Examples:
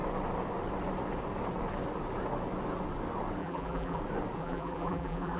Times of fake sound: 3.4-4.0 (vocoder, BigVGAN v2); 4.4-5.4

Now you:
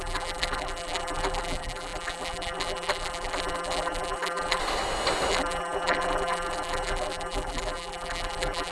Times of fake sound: 0.0-4.6 (vocoder, BigVGAN v2); 5.3-8.7

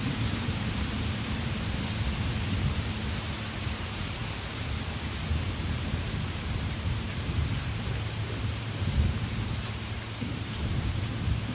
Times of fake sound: 0.0-4.2 (vocoder, BigVGAN v2); 5.9-11.5

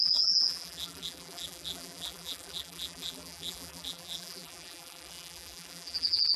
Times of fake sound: 0.0-6.4 (vocoder, BigVGAN v2)

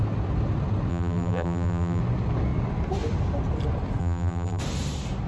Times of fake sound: 0.9-2.0 (vocoder, BigVGAN v2); 4.0-4.6

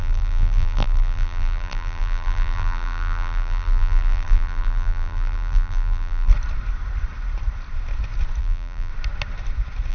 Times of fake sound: 0.0-6.3 (vocoder, BigVGAN v2); 8.4-8.9

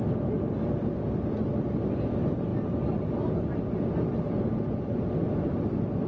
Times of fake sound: none

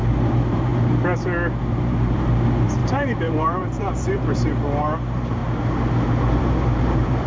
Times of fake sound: 0.0-0.7 (vocoder, BigVGAN v2); 1.6-5.4; 6.4-7.3